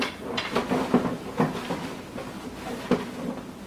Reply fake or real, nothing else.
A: real